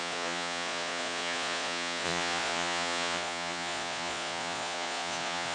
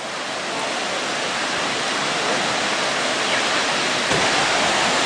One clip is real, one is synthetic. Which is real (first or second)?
second